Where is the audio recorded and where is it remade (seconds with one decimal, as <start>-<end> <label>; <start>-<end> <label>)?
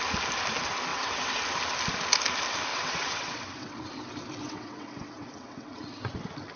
0.0-0.9 recorded; 0.9-1.4 remade; 1.4-2.7 recorded; 2.7-3.9 remade; 3.9-4.4 recorded; 4.4-5.8 remade; 5.8-6.6 recorded